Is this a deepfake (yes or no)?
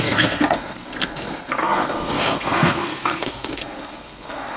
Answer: yes